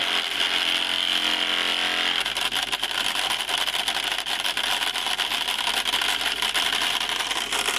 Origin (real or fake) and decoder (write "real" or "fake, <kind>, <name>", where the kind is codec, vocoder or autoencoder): real